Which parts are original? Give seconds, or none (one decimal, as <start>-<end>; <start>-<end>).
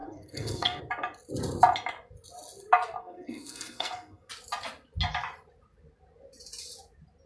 0.8-3.0; 4.3-7.3